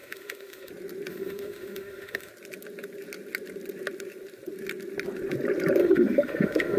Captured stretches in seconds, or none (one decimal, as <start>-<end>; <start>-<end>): 0.7-1.1; 2.3-5.8